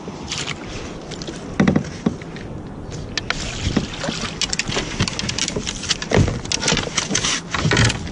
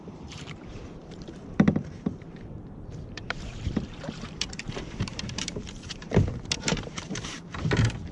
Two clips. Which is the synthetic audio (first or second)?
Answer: second